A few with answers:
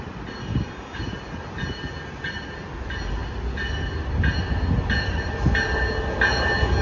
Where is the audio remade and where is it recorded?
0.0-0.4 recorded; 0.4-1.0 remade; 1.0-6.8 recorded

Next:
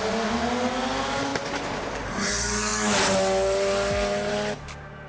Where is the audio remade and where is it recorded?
0.0-5.1 recorded